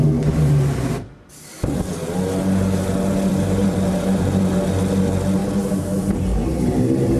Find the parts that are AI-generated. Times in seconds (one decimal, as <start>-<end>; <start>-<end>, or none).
3.3-4.4; 5.4-6.1